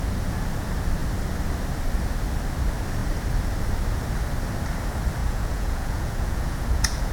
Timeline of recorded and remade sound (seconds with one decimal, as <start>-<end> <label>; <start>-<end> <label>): 0.0-5.2 recorded; 5.2-7.1 remade